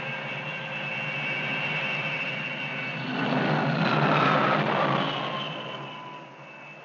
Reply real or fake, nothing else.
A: real